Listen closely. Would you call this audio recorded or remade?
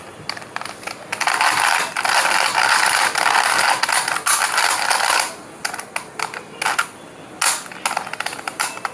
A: recorded